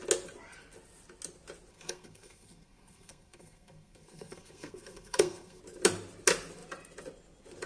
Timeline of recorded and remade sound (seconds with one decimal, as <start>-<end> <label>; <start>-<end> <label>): 0.0-1.7 recorded; 1.7-5.6 remade; 5.6-7.7 recorded